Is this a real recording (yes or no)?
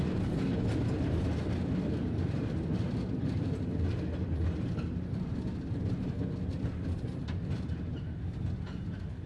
yes